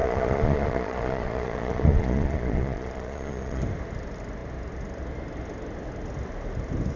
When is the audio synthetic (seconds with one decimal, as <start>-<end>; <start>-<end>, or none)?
0.0-3.6